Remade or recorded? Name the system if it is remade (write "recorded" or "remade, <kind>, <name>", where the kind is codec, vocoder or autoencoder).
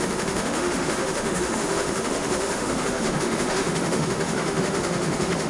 remade, autoencoder, DAC-VAE